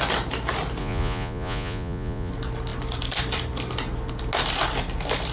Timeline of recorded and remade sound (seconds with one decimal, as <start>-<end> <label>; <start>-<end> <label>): 0.0-0.8 recorded; 0.8-2.3 remade; 2.3-5.3 recorded